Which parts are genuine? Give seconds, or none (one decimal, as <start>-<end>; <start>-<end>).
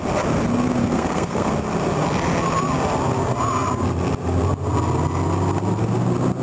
0.0-0.8; 1.5-6.4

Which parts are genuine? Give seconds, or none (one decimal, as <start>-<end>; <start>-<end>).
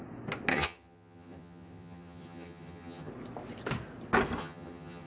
0.0-0.5; 3.1-4.4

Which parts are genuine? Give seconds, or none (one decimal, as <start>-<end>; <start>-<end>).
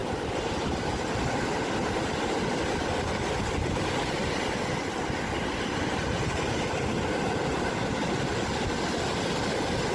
0.0-9.9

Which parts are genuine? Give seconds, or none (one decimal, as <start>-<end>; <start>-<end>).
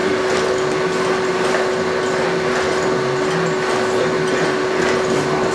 0.0-5.5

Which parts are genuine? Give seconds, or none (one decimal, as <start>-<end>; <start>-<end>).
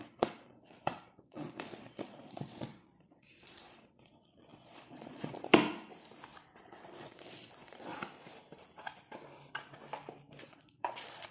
5.5-6.6; 7.9-10.4